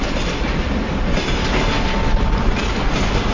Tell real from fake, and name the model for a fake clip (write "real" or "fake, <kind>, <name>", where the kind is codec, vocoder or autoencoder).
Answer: real